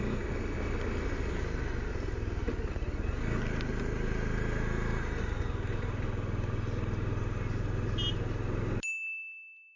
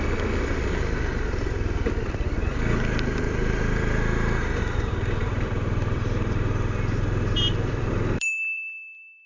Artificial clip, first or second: second